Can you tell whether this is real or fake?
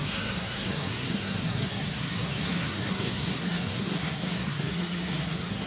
fake